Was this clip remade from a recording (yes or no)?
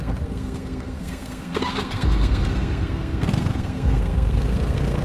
yes